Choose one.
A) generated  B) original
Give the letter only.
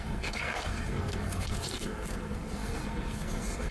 A